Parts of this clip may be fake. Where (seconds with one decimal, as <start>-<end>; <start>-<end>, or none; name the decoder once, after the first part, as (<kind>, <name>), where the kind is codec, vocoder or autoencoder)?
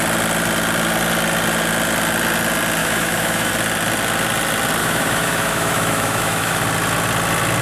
2.8-3.5 (autoencoder, DAC-VAE); 4.8-6.6